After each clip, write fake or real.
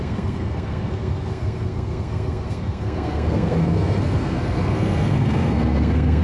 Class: fake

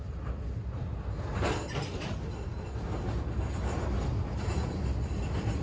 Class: real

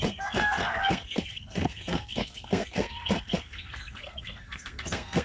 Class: fake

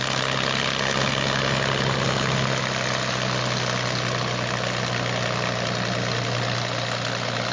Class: real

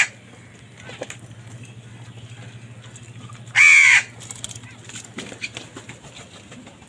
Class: real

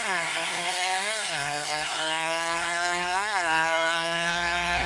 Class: fake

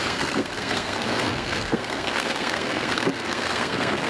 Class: fake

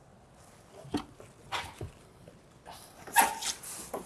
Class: real